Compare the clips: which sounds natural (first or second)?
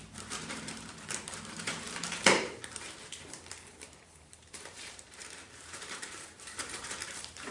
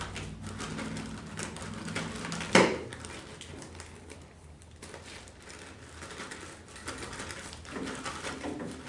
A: second